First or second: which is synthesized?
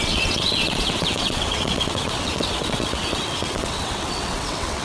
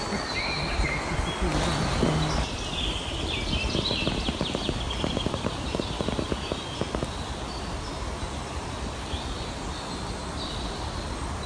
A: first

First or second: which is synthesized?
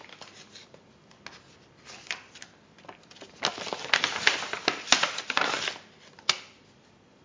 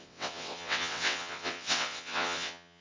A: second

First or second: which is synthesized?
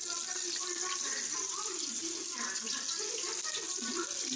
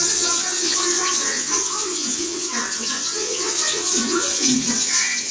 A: second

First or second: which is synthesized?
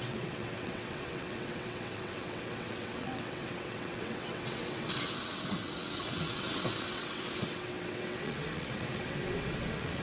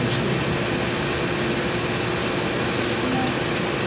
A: first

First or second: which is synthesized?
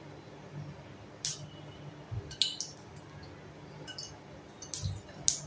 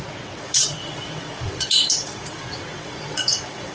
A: second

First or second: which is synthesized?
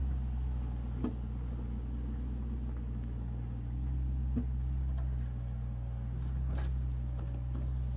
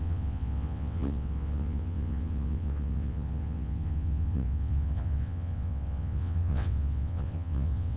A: second